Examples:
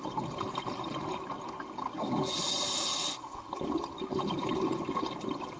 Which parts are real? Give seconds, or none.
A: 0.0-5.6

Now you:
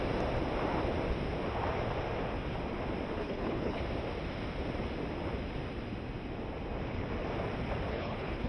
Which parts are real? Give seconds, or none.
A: 0.0-3.2; 3.8-7.9

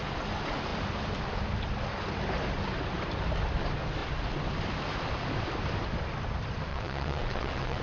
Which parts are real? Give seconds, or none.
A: 0.0-6.7

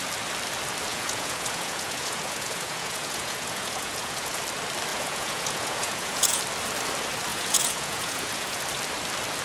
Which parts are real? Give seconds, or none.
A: 0.0-0.9; 4.4-4.9; 6.4-7.3; 8.6-9.4

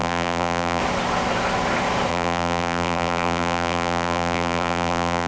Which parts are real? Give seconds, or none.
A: 0.8-2.1